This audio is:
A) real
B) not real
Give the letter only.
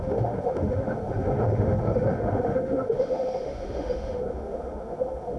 B